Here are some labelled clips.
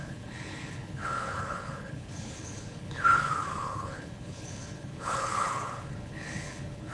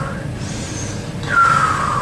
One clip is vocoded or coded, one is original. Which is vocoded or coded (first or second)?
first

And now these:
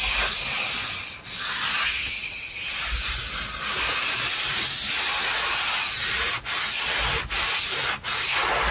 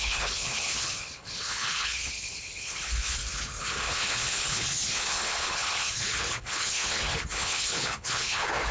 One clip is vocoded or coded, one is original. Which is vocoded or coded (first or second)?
second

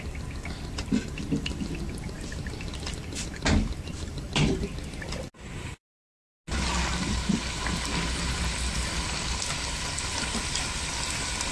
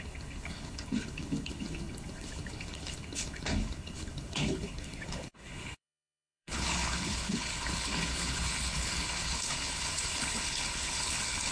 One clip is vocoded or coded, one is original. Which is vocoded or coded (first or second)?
second